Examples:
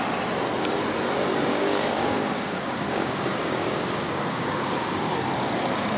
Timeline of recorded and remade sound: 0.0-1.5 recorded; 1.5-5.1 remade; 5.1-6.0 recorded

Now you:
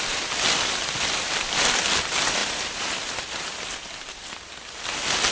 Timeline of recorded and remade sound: 0.0-5.3 recorded

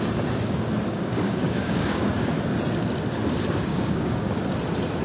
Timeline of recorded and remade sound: 0.0-0.9 recorded; 0.9-2.3 remade; 2.3-3.7 recorded; 3.7-4.4 remade; 4.4-5.0 recorded

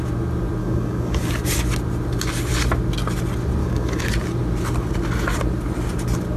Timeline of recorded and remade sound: 0.0-0.6 recorded; 0.6-1.3 remade; 1.3-3.6 recorded; 3.6-4.1 remade; 4.1-6.4 recorded

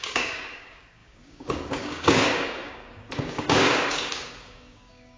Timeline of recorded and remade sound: 0.0-5.2 remade

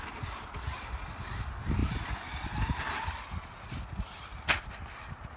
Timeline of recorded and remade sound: 0.0-5.4 recorded

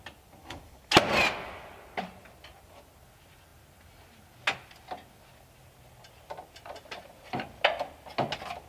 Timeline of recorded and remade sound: 0.0-0.4 recorded; 0.4-0.9 remade; 0.9-8.7 recorded

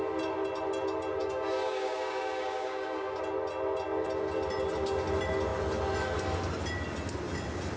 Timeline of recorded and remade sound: 0.0-1.2 recorded; 1.2-3.2 remade; 3.2-7.8 recorded